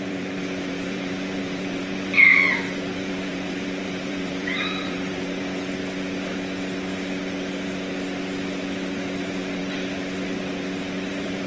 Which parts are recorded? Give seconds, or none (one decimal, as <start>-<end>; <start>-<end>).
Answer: 5.8-9.2; 9.6-11.1